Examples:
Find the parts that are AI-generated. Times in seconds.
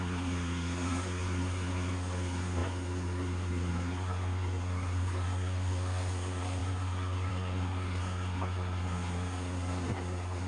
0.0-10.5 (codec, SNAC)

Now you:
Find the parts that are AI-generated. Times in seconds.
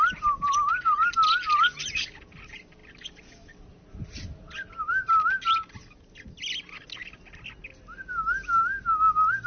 none